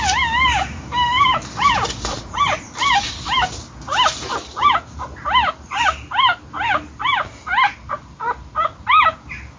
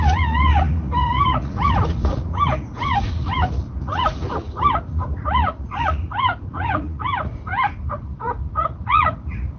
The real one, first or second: first